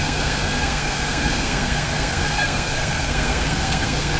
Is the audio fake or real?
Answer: fake